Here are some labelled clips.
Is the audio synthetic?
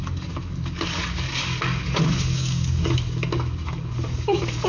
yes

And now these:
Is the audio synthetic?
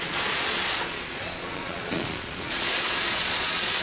yes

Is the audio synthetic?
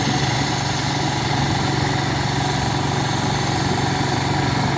no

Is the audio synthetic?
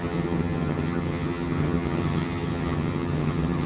yes